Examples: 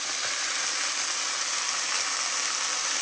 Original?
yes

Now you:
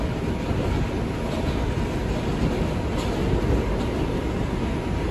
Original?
yes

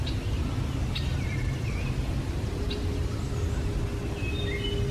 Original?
yes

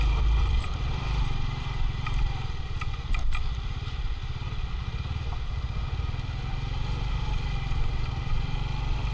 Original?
no